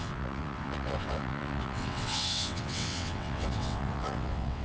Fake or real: fake